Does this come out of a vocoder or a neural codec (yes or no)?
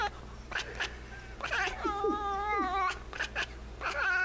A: no